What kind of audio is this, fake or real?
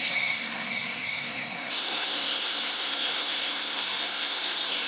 fake